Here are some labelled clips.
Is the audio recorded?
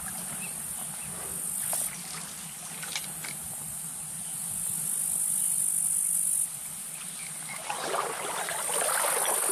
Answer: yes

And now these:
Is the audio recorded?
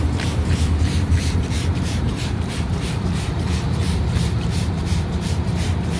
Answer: no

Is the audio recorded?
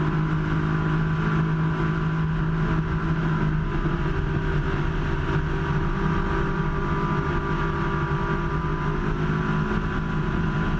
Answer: yes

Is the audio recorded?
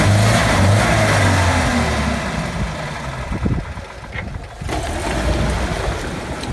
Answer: yes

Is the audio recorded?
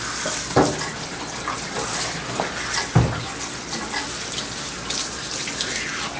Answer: yes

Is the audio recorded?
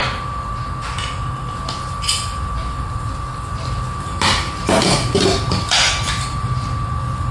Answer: yes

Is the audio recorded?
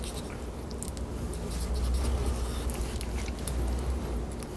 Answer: yes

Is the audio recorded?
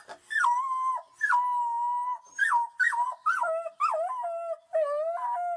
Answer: yes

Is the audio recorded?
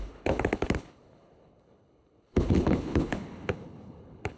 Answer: no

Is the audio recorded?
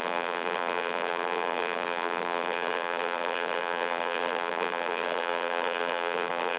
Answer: no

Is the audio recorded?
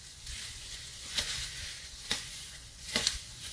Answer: no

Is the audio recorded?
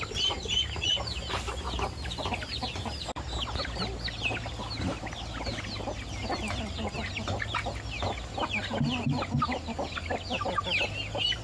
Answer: yes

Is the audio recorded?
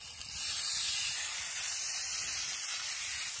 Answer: yes